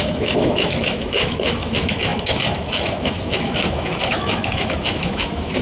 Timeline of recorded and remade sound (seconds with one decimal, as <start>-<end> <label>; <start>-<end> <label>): 0.0-5.6 remade